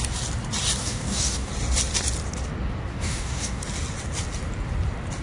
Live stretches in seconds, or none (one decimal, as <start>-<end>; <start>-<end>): 0.0-0.8; 1.5-2.9; 3.6-5.2